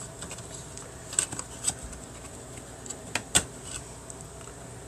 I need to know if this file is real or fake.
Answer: real